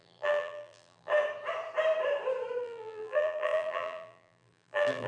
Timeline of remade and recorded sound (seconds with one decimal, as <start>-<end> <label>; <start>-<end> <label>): 0.0-1.1 remade; 1.1-2.6 recorded; 2.6-5.1 remade